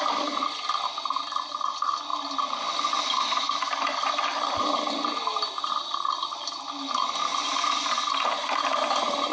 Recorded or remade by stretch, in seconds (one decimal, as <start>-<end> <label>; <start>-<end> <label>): 0.0-9.3 recorded